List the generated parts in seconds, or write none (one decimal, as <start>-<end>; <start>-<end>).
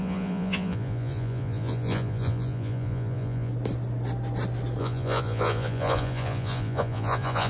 0.0-3.5; 4.8-7.5